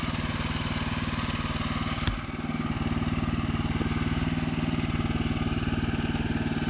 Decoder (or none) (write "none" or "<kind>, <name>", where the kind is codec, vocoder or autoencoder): none